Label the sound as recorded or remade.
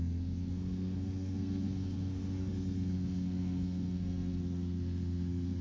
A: remade